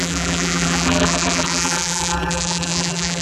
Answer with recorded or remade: remade